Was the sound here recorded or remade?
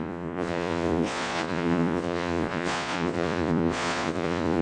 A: remade